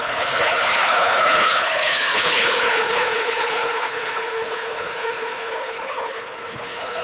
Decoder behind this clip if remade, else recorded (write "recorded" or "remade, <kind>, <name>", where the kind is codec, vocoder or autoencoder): remade, codec, HILCodec